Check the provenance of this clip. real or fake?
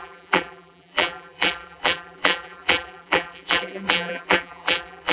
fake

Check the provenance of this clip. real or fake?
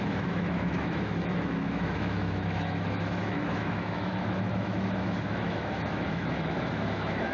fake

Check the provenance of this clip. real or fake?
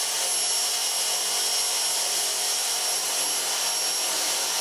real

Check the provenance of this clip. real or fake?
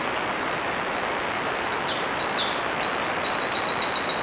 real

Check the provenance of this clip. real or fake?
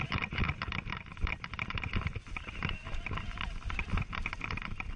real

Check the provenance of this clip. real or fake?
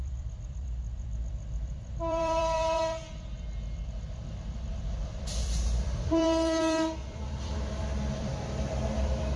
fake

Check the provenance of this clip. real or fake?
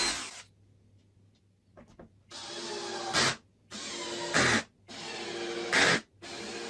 real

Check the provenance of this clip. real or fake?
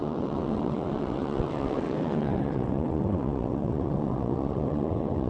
fake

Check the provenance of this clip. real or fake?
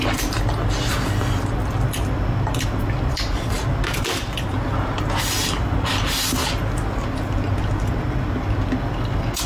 real